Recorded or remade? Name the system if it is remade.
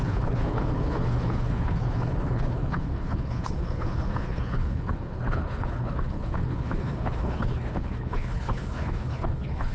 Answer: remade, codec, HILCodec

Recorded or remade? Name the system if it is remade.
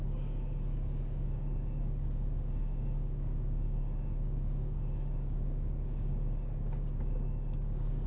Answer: remade, codec, DAC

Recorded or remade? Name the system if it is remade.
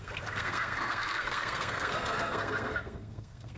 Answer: remade, codec, SNAC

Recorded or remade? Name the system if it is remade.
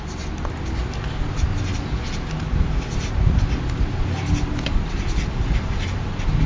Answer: recorded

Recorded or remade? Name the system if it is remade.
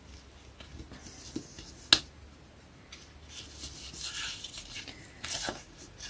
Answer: recorded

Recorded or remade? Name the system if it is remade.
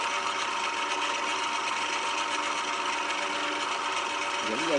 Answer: recorded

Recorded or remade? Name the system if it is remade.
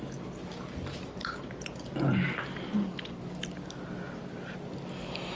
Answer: recorded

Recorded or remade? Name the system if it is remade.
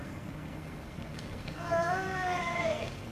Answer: remade, codec, SNAC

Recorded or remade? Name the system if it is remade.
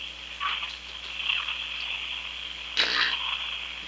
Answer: recorded